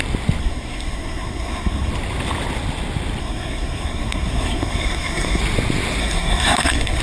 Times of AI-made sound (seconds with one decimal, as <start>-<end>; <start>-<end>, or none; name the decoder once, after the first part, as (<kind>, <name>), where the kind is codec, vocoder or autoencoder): 0.4-1.9 (codec, SNAC); 3.2-5.4; 6.0-7.0